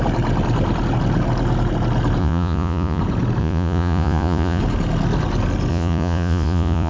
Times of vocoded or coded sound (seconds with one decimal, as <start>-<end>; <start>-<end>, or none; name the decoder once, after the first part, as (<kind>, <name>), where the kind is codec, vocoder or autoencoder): 2.2-3.0 (vocoder, Vocos); 3.4-4.6; 5.7-6.9